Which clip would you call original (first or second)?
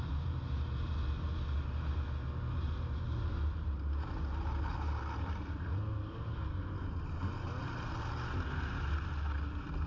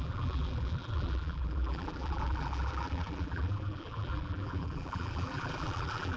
first